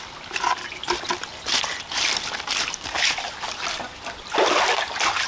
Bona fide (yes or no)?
yes